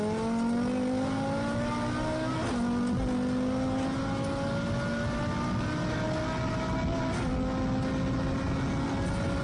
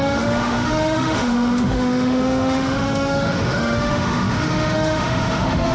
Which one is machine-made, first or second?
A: second